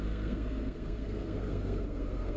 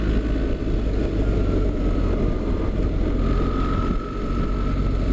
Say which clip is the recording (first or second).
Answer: second